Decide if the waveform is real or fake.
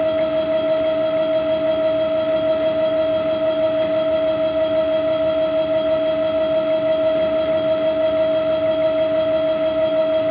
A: real